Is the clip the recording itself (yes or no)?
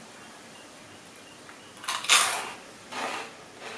yes